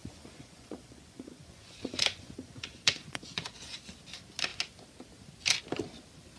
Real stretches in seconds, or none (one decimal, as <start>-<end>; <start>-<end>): 3.8-6.4